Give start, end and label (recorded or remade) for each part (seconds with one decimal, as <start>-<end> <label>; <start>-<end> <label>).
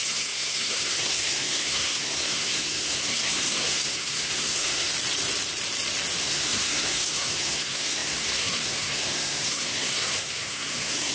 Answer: 0.0-4.9 remade; 4.9-6.2 recorded; 6.2-11.1 remade